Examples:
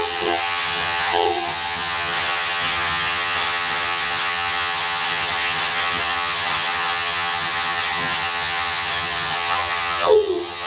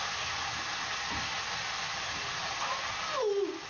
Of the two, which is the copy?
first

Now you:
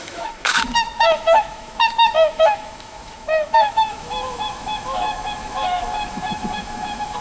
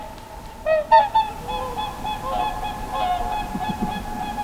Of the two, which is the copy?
first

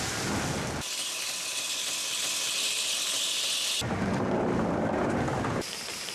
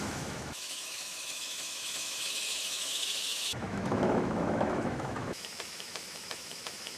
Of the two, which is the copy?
second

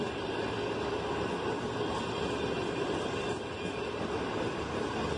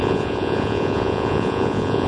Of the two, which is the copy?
second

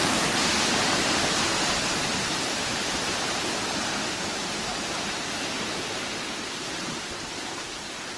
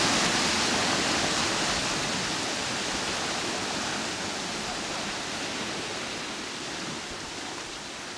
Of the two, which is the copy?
first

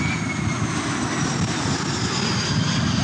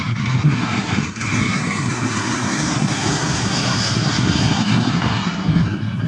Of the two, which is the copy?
second